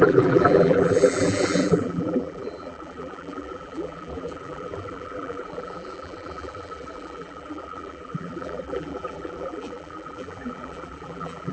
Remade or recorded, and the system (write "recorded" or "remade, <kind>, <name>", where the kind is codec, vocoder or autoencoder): remade, vocoder, BigVGAN v2